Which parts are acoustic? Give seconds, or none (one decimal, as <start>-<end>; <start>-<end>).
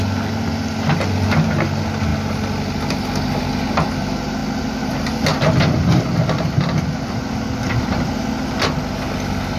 0.0-9.6